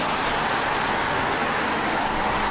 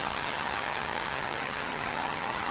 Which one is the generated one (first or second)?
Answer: second